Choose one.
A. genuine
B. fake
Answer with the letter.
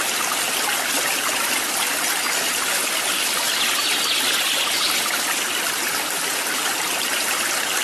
A